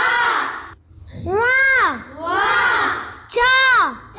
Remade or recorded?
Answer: recorded